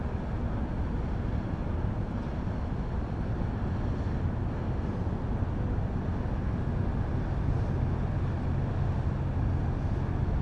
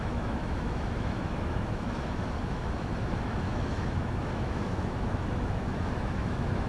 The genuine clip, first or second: first